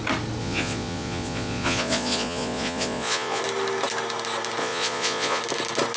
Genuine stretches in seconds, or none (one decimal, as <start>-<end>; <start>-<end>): 0.0-0.4; 3.4-4.6; 5.4-6.0